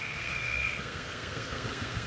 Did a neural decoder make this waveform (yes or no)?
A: yes